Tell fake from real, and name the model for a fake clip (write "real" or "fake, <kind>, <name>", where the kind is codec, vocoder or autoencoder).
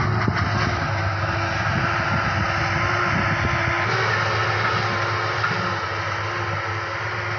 real